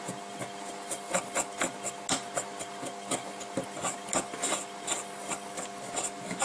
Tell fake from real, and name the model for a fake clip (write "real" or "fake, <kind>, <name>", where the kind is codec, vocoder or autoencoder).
real